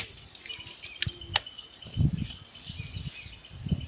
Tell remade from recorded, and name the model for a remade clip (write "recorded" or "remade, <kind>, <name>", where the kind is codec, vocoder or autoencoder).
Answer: recorded